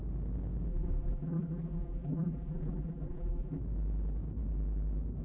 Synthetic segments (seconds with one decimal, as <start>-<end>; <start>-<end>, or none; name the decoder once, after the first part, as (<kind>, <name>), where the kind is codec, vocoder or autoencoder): 0.7-3.6 (vocoder, BigVGAN v2)